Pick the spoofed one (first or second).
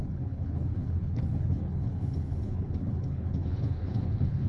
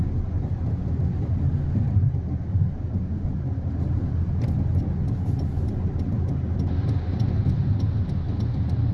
first